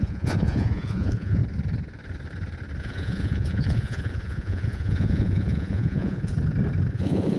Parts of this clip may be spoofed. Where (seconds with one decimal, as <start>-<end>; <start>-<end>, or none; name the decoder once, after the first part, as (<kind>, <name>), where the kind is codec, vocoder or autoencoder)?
0.0-1.4 (vocoder, Vocos); 2.8-6.3; 6.9-7.4

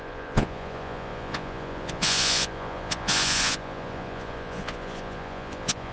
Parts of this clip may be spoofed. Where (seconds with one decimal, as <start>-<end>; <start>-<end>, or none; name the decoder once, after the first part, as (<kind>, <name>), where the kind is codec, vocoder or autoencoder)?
0.0-5.9 (vocoder, Vocos)

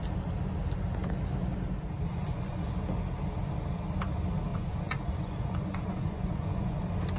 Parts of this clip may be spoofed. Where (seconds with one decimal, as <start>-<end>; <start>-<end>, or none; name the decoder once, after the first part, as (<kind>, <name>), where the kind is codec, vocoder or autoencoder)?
2.1-2.7 (vocoder, Vocos); 4.5-6.8

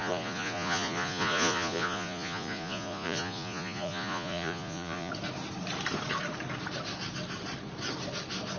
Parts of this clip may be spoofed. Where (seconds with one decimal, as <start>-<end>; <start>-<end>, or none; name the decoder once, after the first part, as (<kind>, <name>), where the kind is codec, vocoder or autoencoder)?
0.0-5.1 (vocoder, Vocos)

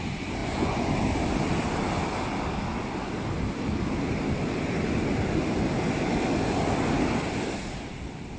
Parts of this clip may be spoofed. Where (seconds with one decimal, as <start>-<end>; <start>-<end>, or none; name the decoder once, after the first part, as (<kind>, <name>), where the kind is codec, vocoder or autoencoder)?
0.4-0.9 (vocoder, Vocos)